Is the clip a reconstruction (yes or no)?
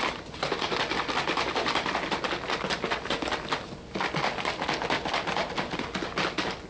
no